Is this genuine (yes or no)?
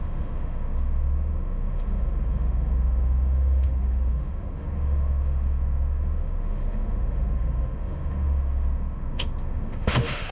no